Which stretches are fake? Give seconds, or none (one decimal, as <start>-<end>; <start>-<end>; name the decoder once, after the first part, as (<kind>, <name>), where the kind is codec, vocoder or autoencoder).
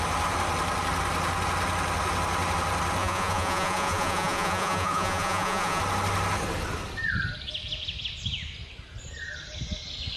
3.0-5.8 (vocoder, Vocos)